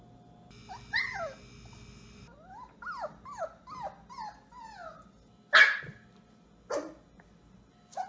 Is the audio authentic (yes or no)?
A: yes